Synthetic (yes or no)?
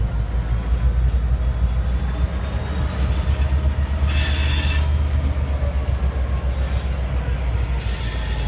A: no